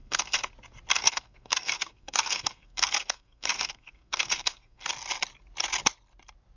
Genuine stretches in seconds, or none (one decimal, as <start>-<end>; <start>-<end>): 0.5-0.9; 4.9-6.6